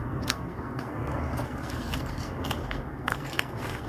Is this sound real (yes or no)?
no